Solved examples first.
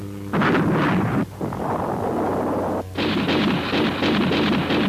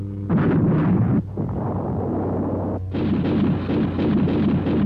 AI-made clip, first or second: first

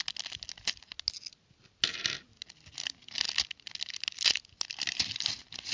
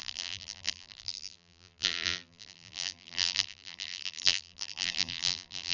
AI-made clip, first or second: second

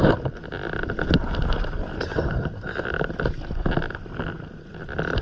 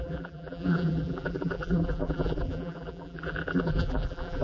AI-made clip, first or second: second